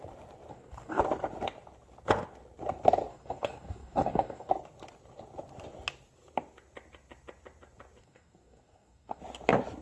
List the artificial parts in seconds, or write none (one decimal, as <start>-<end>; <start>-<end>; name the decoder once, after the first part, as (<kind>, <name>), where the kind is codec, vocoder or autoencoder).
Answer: 0.5-1.0 (codec, DAC); 3.1-4.5; 8.0-9.2